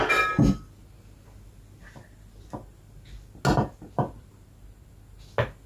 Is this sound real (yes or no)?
yes